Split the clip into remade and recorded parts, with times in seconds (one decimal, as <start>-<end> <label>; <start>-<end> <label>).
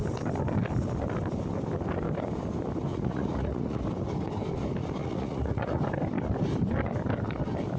0.0-2.9 recorded; 2.9-3.8 remade; 3.8-5.0 recorded; 5.0-5.8 remade; 5.8-7.8 recorded